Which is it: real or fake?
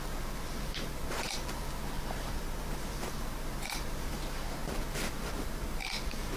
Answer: fake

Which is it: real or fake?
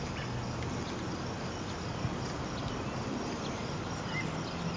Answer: real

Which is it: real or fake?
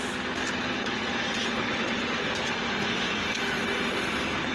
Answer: real